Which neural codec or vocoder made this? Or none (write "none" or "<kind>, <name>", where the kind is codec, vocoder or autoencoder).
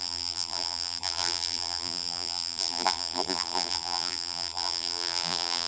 vocoder, BigVGAN v2